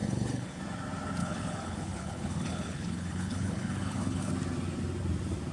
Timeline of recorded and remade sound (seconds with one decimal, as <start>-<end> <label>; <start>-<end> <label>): 0.0-0.6 remade; 0.6-1.2 recorded; 1.2-4.3 remade; 4.3-5.5 recorded